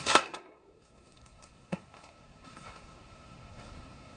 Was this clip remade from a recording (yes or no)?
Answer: yes